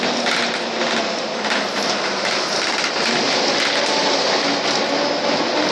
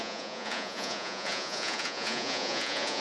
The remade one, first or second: second